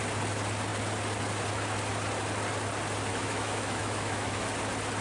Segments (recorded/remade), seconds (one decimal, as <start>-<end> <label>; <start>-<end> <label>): 0.0-3.1 recorded; 3.1-4.5 remade; 4.5-5.0 recorded